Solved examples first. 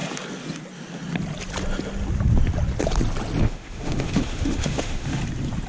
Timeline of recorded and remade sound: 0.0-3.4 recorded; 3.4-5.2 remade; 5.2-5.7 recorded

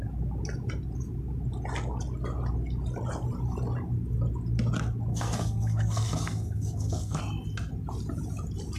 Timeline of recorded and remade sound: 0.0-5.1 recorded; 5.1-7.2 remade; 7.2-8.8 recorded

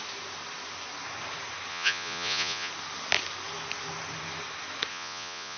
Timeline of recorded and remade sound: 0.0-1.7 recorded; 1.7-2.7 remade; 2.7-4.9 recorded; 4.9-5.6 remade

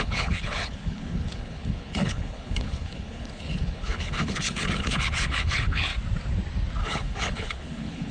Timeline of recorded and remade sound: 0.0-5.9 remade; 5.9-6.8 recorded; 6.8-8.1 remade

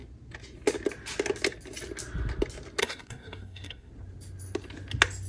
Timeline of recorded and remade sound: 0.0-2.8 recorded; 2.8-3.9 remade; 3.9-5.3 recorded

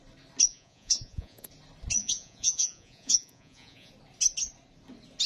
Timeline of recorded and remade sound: 0.0-0.5 recorded; 0.5-1.5 remade; 1.5-2.0 recorded; 2.0-3.9 remade; 3.9-5.3 recorded